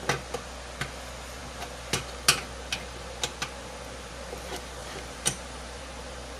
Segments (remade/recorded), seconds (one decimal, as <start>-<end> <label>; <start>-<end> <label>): 0.0-4.8 recorded; 4.8-5.8 remade; 5.8-6.4 recorded